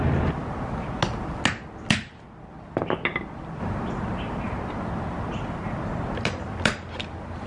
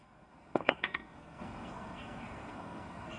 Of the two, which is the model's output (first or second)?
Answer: second